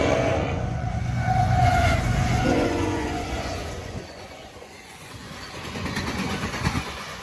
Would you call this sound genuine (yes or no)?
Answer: no